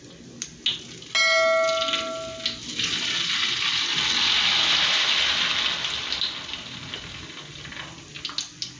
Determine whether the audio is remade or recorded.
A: recorded